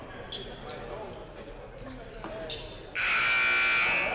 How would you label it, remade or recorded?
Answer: recorded